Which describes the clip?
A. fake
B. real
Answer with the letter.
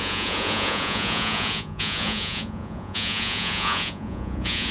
A